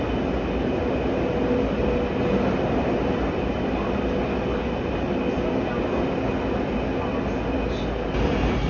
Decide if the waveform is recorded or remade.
recorded